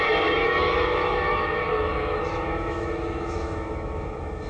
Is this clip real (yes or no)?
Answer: no